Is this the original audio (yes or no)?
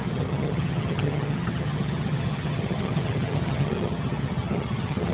no